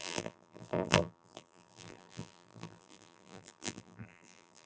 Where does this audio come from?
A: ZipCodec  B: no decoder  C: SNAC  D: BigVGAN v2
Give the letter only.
D